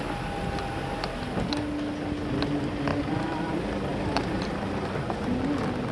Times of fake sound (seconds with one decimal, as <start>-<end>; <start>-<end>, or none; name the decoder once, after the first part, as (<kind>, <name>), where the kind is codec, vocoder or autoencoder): 2.9-3.5 (vocoder, BigVGAN v2); 3.9-5.0